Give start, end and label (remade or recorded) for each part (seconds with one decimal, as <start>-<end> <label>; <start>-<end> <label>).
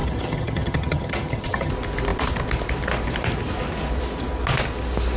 0.0-1.7 remade; 1.7-5.2 recorded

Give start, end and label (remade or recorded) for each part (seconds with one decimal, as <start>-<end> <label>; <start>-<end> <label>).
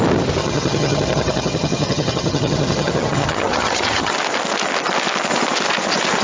0.0-0.4 recorded; 0.4-4.1 remade; 4.1-6.2 recorded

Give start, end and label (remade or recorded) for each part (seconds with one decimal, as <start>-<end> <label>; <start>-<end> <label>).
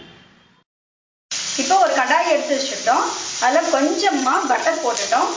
0.0-4.2 recorded; 4.2-4.7 remade; 4.7-5.4 recorded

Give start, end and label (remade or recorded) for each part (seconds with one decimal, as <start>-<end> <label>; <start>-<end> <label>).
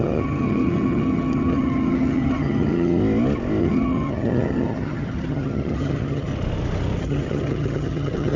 0.0-3.0 remade; 3.0-3.6 recorded; 3.6-6.3 remade; 6.3-7.0 recorded; 7.0-8.4 remade